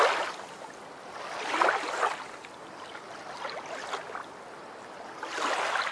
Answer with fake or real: real